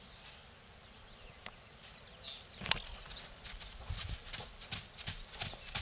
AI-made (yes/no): no